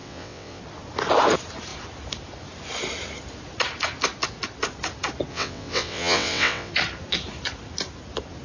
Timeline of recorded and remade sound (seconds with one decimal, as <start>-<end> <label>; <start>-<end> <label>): 0.0-0.6 remade; 0.6-5.3 recorded; 5.3-6.7 remade; 6.7-8.4 recorded